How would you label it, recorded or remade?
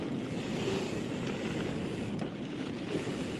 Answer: recorded